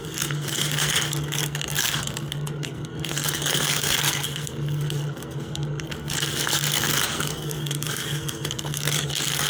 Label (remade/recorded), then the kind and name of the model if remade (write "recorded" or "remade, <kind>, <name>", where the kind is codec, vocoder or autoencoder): remade, codec, SNAC